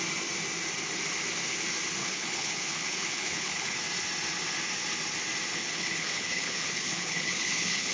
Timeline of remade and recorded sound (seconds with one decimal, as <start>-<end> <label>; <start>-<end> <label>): 0.0-2.0 recorded; 2.0-3.8 remade; 3.8-5.5 recorded; 5.5-7.9 remade